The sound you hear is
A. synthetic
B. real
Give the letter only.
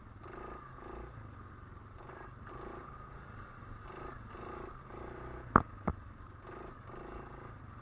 B